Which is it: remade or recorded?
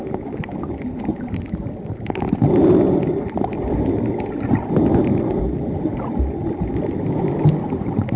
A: recorded